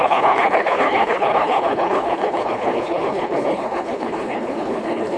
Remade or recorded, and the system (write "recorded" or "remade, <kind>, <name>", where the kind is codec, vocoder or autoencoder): remade, codec, HILCodec